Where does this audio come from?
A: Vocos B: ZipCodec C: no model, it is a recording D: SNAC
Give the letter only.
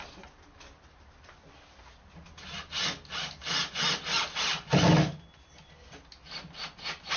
C